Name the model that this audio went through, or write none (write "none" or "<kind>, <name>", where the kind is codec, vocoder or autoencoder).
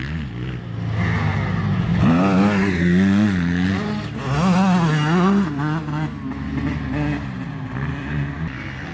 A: none